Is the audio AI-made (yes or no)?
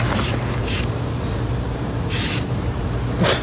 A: yes